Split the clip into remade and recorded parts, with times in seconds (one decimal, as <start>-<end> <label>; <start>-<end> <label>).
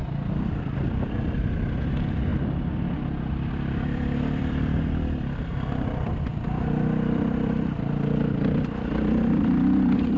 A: 0.0-0.7 recorded; 0.7-2.3 remade; 2.3-3.3 recorded; 3.3-10.2 remade